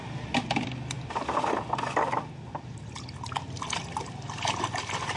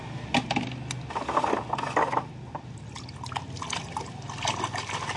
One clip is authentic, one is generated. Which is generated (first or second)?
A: first